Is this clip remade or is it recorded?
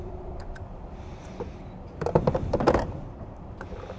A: remade